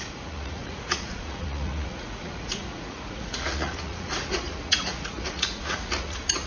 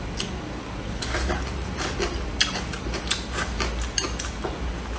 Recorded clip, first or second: second